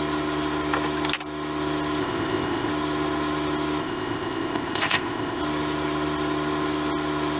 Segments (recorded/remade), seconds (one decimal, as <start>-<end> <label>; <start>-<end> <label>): 0.0-2.0 recorded; 2.0-2.7 remade; 2.7-3.8 recorded; 3.8-5.4 remade; 5.4-7.4 recorded